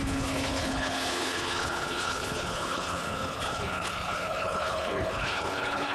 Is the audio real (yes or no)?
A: no